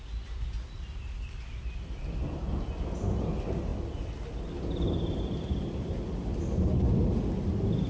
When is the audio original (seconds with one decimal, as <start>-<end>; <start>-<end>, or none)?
0.0-7.9

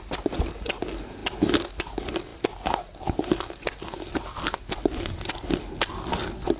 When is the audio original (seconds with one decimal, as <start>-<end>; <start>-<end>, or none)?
0.0-6.6